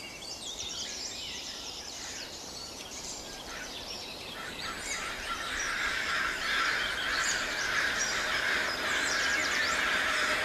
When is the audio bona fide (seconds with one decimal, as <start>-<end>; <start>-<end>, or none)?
none